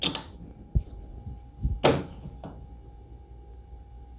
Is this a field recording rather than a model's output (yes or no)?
yes